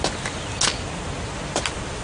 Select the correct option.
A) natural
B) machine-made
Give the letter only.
A